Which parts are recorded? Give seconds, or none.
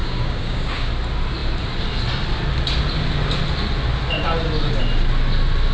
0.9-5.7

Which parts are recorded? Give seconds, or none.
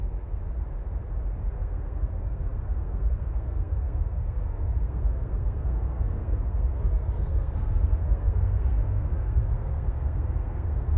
0.4-1.5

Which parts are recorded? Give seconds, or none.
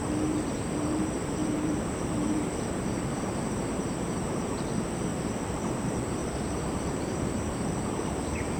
5.1-5.7; 6.2-6.9